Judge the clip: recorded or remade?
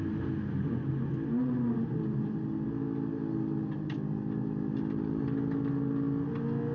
recorded